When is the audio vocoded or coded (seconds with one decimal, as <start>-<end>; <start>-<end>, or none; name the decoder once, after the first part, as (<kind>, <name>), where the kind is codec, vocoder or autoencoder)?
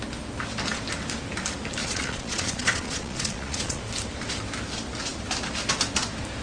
1.8-3.8 (vocoder, Vocos)